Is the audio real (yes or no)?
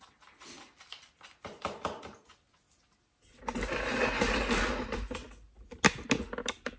yes